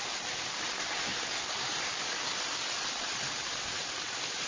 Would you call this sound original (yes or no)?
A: yes